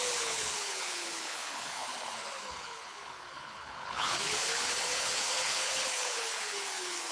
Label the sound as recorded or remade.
remade